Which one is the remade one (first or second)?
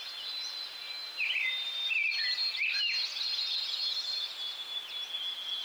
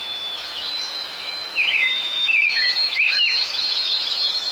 second